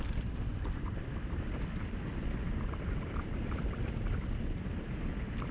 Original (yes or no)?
no